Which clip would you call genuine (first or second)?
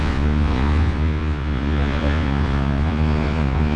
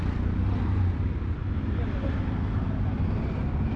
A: second